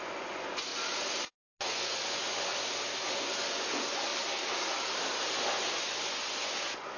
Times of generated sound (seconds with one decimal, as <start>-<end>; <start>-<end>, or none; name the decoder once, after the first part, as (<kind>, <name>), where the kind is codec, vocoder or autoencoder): 0.0-0.7 (vocoder, Vocos); 1.7-2.5; 3.2-4.1; 5.3-7.0